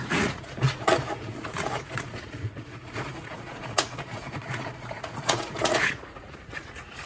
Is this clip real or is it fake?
fake